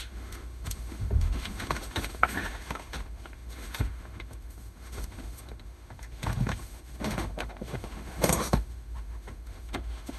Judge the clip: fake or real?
fake